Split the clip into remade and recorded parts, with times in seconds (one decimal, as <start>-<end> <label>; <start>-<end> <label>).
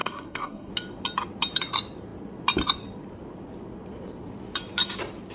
0.0-0.7 remade; 0.7-5.3 recorded